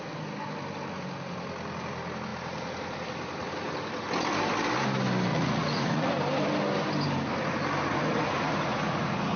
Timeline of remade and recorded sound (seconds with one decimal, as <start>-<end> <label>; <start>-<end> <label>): 0.0-5.3 recorded; 5.3-6.1 remade; 6.1-7.8 recorded; 7.8-9.4 remade